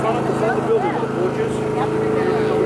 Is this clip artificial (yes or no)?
no